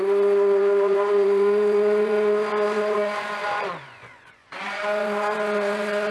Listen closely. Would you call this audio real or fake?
fake